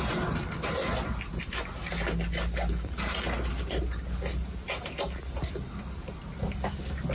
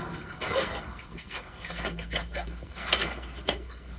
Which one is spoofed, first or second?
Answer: second